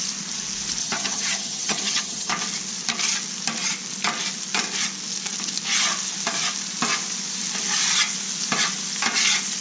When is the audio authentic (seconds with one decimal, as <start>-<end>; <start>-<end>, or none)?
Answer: 0.0-0.8; 2.3-9.6